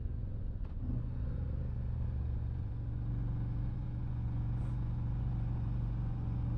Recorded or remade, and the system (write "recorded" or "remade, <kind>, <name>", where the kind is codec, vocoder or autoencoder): remade, vocoder, Vocos